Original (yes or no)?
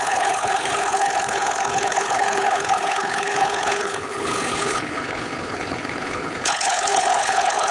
no